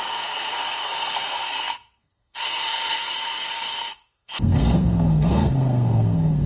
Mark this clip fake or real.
fake